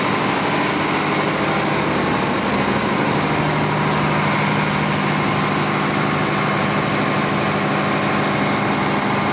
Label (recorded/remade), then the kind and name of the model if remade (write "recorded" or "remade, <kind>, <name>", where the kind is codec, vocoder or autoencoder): recorded